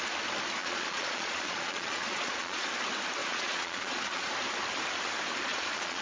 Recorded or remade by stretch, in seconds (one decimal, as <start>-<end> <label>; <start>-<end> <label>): 0.0-0.6 recorded; 0.6-2.7 remade; 2.7-3.2 recorded; 3.2-4.3 remade; 4.3-5.5 recorded; 5.5-6.0 remade